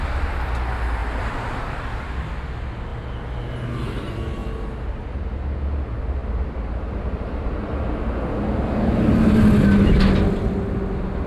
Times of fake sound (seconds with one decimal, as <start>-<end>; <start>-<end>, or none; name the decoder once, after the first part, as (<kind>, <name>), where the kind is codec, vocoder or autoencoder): 1.0-2.3 (vocoder, BigVGAN v2); 6.2-7.7